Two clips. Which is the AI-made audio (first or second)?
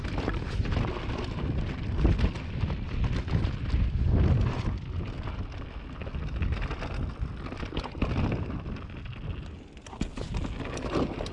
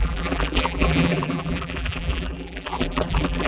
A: second